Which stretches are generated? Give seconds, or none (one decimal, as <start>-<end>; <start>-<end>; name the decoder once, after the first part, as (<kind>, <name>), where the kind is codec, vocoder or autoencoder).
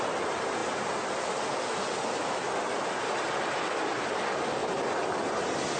none